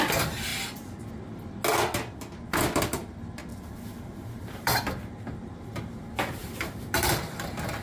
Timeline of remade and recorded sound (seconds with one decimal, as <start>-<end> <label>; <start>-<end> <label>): 0.0-0.5 recorded; 0.5-1.1 remade; 1.1-3.5 recorded; 3.5-5.7 remade; 5.7-6.4 recorded; 6.4-7.1 remade; 7.1-7.8 recorded